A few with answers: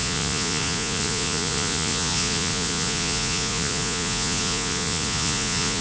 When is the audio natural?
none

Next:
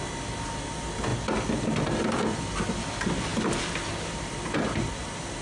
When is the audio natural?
0.0-5.4